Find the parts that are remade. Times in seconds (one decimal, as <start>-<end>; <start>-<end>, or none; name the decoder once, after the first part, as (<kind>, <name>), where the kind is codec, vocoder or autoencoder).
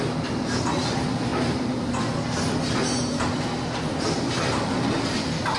none